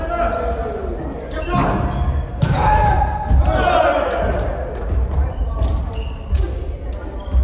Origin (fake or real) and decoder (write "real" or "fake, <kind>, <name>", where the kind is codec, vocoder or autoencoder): real